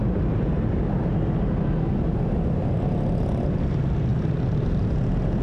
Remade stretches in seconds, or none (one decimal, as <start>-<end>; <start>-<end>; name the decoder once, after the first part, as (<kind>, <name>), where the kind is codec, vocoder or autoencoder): 4.1-4.8 (vocoder, BigVGAN v2)

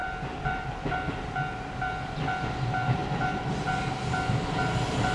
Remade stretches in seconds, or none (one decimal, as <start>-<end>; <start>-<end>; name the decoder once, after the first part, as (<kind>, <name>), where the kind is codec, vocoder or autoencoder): 0.0-1.1 (vocoder, BigVGAN v2)

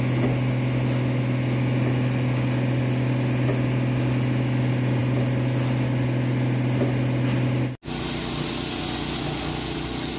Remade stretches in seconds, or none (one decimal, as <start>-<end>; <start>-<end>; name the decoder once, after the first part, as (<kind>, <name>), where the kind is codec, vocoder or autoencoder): none

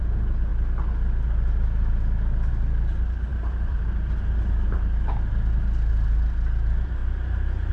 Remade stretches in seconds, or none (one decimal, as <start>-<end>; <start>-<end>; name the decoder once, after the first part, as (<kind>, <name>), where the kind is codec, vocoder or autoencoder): 3.3-5.3 (vocoder, BigVGAN v2); 7.0-7.7

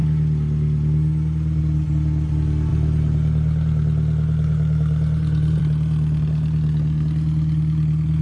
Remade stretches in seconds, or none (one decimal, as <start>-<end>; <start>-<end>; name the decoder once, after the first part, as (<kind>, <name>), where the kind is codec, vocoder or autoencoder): 2.7-5.6 (vocoder, BigVGAN v2)

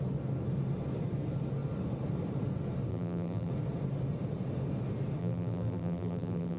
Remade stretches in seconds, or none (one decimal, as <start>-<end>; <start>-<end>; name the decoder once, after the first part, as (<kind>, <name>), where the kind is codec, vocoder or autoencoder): 2.9-3.5 (vocoder, BigVGAN v2); 5.2-6.6

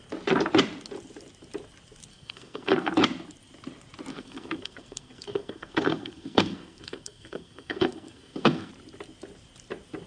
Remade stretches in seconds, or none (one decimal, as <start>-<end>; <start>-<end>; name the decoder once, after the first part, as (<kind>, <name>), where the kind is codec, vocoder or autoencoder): 2.1-2.9 (codec, SNAC); 4.1-8.7

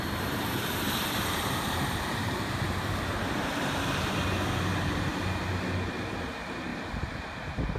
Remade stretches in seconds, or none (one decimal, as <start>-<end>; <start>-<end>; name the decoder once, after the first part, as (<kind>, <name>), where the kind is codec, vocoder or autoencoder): 0.0-4.7 (vocoder, BigVGAN v2); 5.9-7.8